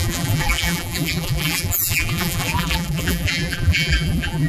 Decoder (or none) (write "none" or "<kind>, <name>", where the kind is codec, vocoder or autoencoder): vocoder, BigVGAN v2